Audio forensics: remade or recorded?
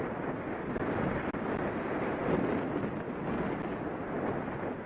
recorded